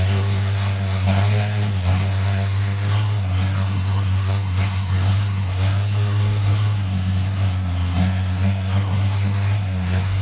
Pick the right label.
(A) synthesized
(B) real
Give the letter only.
A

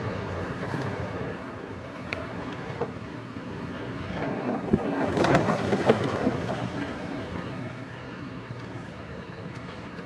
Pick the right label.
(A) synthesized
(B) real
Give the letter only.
A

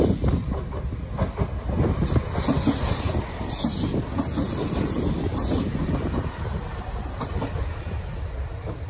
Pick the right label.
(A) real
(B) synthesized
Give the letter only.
A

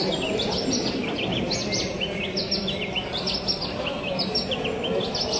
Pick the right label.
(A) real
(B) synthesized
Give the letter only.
A